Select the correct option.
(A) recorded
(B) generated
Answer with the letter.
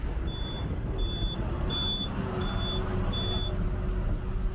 A